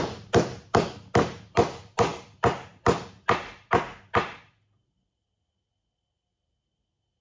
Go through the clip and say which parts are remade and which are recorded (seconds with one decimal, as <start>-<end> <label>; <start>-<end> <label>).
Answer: 0.0-7.2 recorded